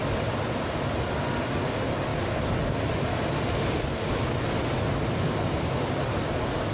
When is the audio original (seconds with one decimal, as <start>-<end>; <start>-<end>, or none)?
0.0-6.7